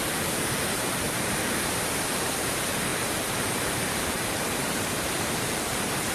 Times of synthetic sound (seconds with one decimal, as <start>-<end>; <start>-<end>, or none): 0.0-6.1